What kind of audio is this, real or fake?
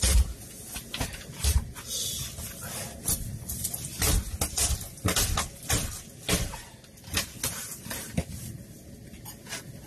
real